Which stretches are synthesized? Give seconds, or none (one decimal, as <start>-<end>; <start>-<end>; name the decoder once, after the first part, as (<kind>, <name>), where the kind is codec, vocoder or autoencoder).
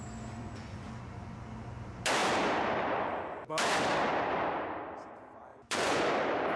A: 0.4-0.9 (vocoder, Vocos); 5.5-6.0